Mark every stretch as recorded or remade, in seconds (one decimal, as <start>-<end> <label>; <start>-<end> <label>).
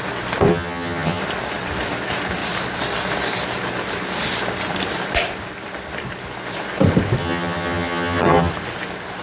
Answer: 0.0-0.5 recorded; 0.5-1.2 remade; 1.2-7.2 recorded; 7.2-8.5 remade; 8.5-9.2 recorded